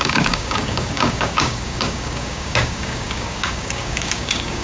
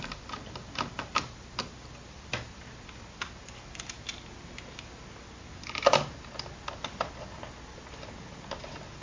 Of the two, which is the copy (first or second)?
first